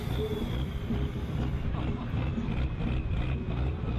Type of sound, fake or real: real